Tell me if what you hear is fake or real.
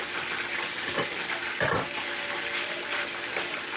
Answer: real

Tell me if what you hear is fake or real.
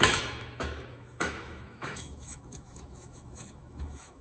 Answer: fake